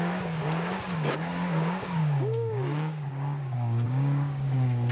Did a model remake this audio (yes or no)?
yes